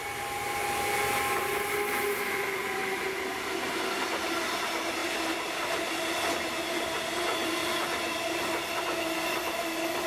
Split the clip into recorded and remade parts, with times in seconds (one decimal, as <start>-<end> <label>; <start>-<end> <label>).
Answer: 0.0-10.1 recorded